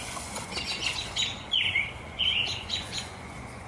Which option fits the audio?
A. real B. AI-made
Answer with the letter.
B